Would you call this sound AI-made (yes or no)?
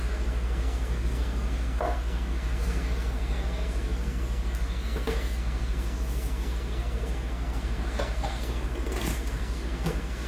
yes